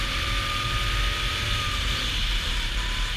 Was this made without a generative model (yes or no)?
yes